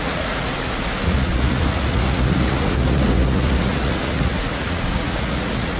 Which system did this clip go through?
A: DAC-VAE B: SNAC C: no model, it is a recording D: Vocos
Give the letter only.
D